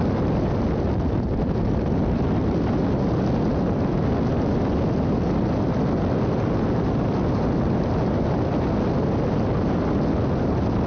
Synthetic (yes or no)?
no